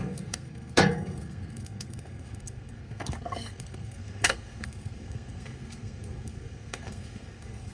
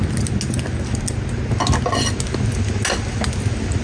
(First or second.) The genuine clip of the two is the second